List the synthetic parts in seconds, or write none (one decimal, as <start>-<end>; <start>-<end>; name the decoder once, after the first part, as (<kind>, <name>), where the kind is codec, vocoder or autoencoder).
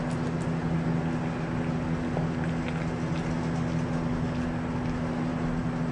none